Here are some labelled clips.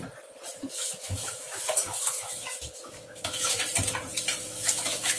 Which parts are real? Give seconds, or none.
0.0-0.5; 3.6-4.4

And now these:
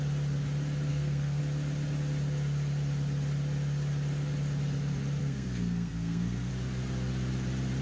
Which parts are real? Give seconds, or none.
0.0-0.9; 1.4-5.2; 6.5-7.8